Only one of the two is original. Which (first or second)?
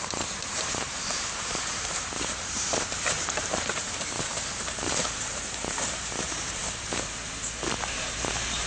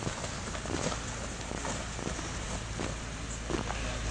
second